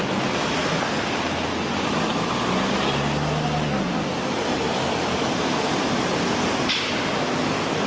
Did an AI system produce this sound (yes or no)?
no